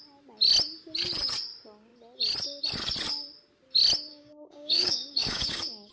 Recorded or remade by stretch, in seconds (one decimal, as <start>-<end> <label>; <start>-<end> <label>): 0.0-4.1 recorded; 4.1-5.9 remade